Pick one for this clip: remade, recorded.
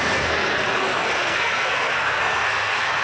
remade